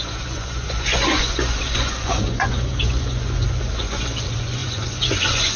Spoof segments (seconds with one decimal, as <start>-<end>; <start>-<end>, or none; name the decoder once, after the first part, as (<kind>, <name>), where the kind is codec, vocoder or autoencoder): 0.0-5.6 (vocoder, Vocos)